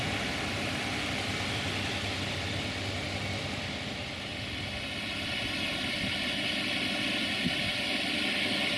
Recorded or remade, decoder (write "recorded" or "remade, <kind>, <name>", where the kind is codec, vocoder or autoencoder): recorded